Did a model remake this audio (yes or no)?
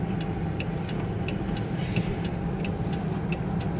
no